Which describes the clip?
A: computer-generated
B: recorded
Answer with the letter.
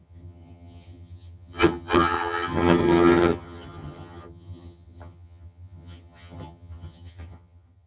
A